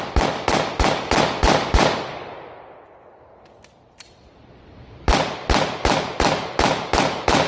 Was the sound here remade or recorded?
recorded